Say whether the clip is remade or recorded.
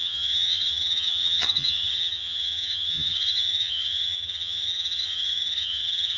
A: remade